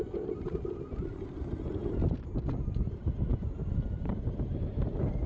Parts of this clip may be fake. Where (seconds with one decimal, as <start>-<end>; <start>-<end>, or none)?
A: 1.8-2.4; 3.3-5.3